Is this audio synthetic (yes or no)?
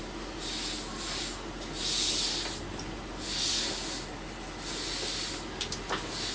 no